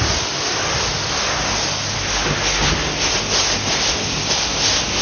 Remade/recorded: recorded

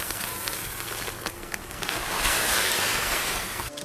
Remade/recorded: remade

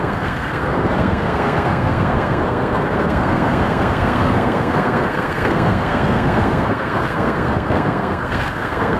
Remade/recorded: remade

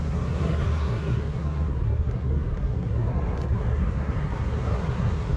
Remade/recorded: remade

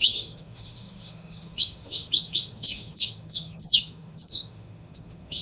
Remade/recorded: remade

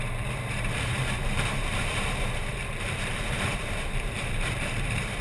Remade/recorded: remade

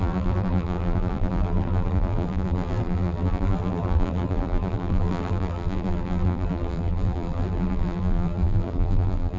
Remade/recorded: remade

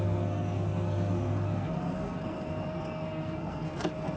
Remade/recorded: remade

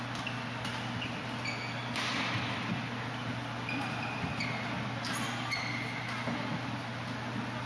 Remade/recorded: recorded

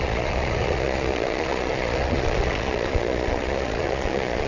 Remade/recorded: remade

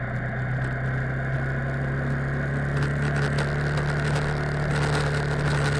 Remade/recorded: recorded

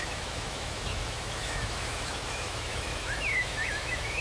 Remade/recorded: remade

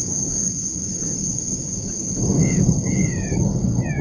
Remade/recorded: remade